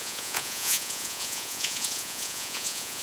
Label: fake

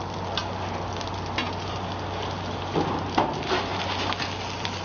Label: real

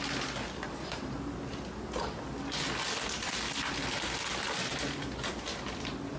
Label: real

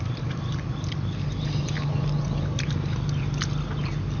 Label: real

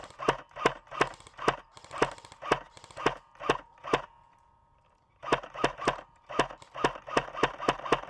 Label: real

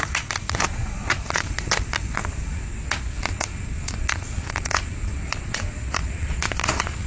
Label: fake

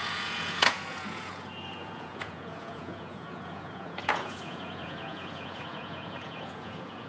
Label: fake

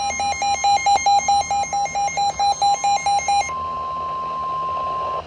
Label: real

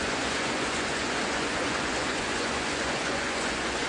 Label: fake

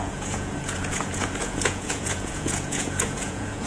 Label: fake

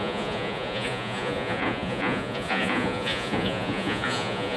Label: fake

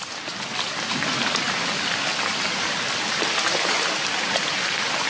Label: real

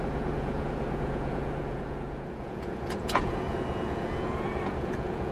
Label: fake